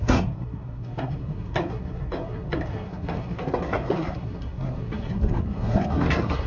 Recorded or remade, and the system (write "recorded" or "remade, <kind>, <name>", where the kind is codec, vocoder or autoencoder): remade, codec, SNAC